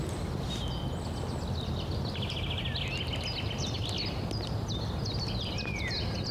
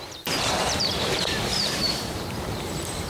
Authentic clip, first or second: first